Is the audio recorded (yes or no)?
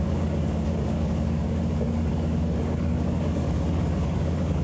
no